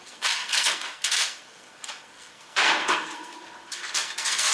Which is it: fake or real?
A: fake